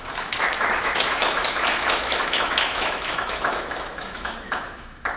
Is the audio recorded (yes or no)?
no